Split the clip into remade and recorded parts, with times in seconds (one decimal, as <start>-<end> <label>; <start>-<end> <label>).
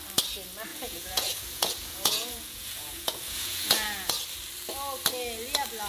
0.0-0.7 recorded; 0.7-4.1 remade; 4.1-5.9 recorded